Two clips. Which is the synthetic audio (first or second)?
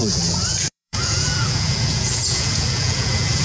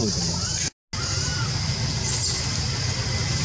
first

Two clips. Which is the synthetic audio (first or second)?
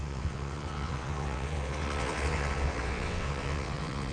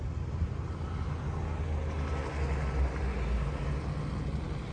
first